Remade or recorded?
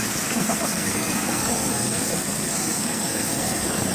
remade